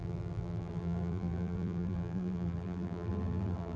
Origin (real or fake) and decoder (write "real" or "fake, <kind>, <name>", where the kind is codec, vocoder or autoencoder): fake, vocoder, BigVGAN v2